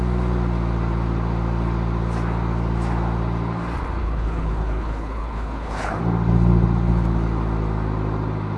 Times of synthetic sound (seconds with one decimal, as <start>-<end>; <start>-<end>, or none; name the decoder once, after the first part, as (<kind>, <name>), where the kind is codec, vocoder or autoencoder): 4.0-6.0 (codec, HILCodec)